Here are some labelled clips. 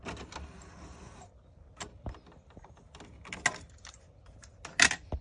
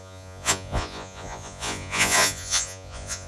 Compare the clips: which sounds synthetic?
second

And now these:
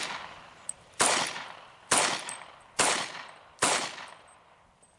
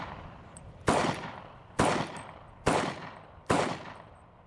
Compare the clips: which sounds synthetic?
second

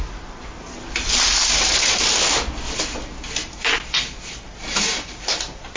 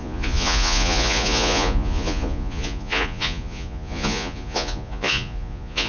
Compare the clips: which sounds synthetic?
second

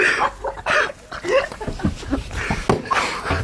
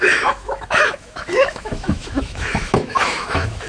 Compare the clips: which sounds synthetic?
second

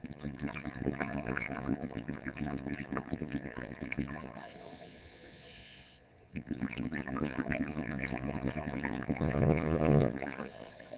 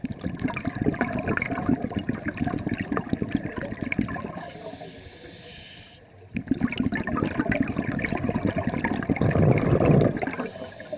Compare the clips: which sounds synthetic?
first